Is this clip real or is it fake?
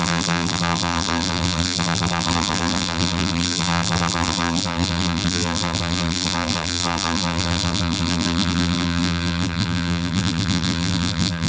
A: fake